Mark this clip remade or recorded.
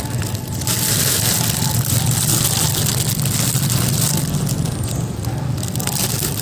recorded